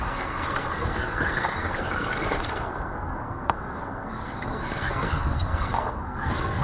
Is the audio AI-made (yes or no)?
yes